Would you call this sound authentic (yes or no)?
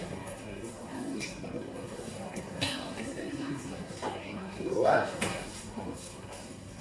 no